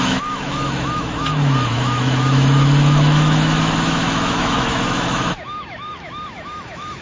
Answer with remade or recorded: remade